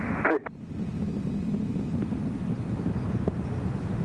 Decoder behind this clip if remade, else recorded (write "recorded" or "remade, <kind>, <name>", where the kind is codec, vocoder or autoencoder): recorded